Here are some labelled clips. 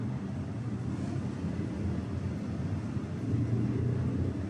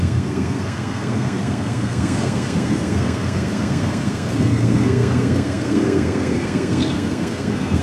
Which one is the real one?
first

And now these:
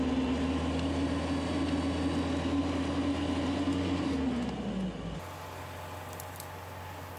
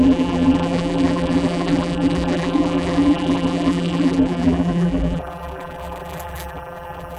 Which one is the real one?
first